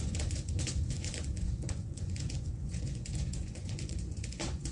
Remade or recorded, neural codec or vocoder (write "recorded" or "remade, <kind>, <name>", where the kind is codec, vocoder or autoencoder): remade, vocoder, Vocos